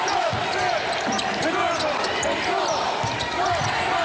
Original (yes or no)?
yes